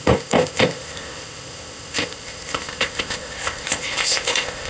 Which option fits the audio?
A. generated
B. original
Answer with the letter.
A